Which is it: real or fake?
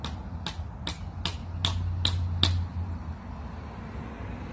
real